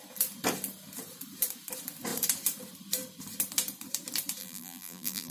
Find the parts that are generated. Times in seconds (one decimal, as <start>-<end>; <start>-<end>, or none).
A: 4.4-5.3